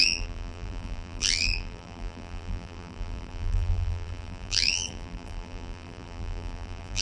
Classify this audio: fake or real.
fake